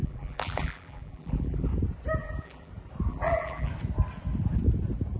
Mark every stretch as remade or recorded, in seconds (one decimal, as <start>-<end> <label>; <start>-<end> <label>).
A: 0.0-1.7 remade; 1.7-2.2 recorded; 2.2-2.7 remade; 2.7-3.1 recorded; 3.1-3.7 remade; 3.7-5.2 recorded